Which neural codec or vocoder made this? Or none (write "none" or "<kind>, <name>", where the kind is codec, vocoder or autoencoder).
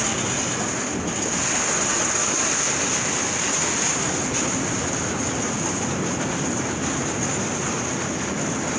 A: none